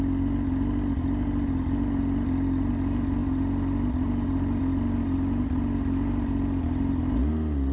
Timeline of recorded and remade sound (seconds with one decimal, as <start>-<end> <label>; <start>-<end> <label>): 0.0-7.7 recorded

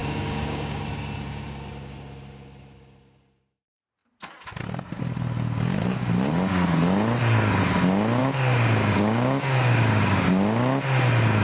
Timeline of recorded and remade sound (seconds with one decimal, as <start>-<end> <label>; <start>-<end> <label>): 0.0-0.8 remade; 0.8-8.2 recorded; 8.2-10.2 remade; 10.2-11.4 recorded

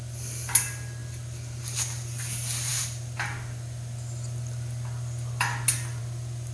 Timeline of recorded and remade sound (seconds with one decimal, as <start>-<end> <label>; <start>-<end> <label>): 0.0-6.5 recorded

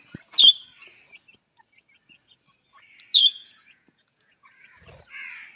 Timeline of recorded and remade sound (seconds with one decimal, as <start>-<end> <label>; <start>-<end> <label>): 0.0-3.2 recorded; 3.2-4.6 remade; 4.6-5.6 recorded

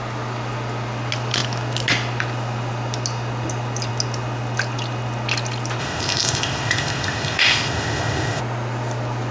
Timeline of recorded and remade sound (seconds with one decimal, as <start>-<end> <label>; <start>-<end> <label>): 0.0-5.8 recorded; 5.8-8.4 remade; 8.4-9.3 recorded